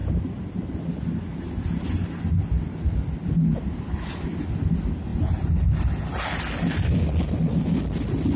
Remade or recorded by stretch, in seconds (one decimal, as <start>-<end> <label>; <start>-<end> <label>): 0.0-8.4 recorded